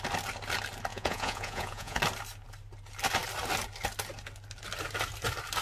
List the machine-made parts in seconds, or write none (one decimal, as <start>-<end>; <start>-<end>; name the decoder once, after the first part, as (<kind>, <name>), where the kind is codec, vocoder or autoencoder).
0.9-2.0 (vocoder, Vocos)